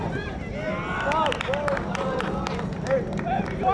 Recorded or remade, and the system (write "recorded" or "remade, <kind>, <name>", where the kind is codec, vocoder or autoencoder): recorded